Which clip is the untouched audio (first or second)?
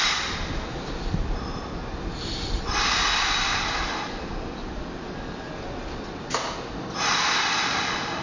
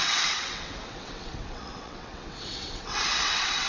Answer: first